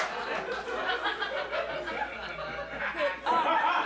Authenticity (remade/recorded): recorded